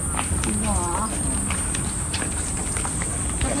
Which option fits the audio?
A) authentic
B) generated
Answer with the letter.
A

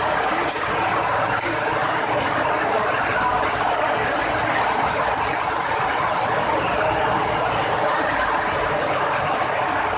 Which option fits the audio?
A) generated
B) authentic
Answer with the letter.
B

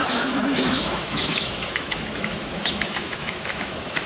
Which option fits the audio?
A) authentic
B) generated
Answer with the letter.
B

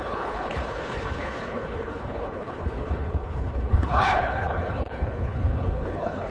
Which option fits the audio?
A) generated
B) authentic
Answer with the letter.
A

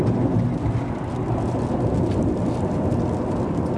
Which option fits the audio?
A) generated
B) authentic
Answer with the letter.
B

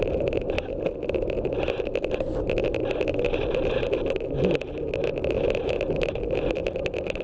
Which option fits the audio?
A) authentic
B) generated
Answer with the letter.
A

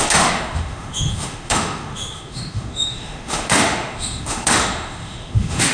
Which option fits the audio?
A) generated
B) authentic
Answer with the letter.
A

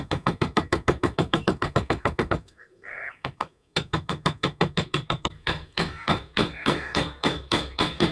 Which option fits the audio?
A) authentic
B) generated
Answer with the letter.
B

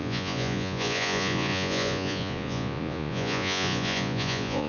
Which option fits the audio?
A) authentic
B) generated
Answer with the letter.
B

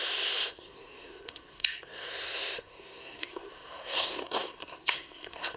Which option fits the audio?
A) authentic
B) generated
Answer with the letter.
B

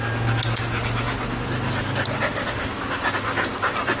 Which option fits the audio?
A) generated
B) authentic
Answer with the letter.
B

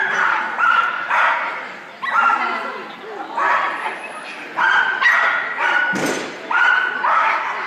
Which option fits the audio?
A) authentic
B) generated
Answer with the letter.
A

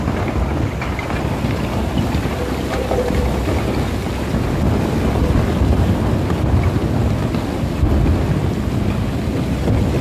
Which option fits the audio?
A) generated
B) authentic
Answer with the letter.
B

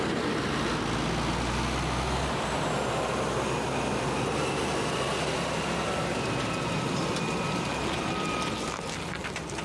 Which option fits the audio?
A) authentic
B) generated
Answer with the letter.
A